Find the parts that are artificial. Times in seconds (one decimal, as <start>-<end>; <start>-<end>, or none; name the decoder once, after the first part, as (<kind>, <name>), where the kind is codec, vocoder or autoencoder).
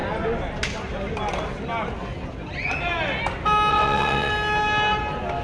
3.7-4.3 (vocoder, WaveNeXt)